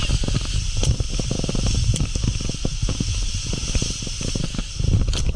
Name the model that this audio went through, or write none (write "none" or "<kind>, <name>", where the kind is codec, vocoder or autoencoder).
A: none